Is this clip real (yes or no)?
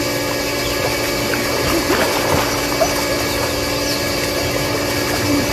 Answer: yes